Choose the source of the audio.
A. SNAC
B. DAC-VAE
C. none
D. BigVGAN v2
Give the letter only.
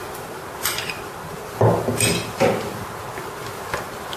C